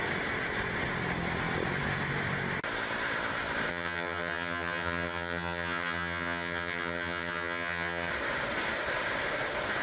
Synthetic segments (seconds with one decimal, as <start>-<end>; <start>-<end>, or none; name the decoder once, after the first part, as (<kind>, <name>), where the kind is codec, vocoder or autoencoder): 3.7-8.1 (vocoder, HiFi-GAN)